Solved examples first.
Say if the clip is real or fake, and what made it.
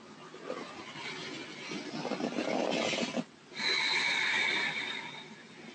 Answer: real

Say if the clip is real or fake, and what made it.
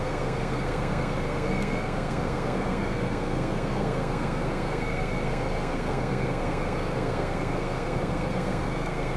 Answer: fake, codec, SNAC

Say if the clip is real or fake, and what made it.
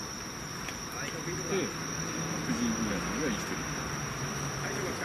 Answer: real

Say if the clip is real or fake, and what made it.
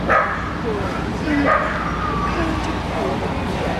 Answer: real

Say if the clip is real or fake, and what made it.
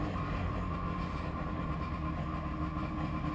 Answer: real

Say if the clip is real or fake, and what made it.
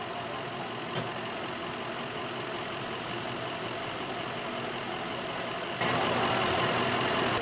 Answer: real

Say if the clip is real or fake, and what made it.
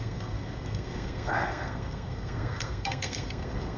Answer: fake, codec, SNAC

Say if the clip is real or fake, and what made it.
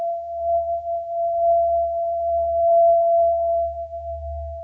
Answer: fake, codec, SNAC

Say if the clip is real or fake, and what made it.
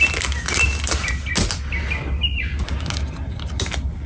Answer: real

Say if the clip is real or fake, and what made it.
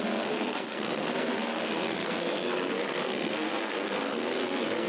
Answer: fake, codec, SNAC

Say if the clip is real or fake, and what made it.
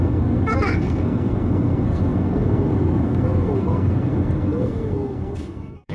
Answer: fake, codec, SNAC